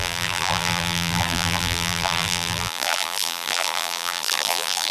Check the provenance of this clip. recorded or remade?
remade